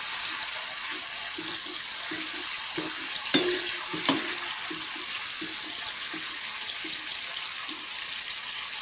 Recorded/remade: recorded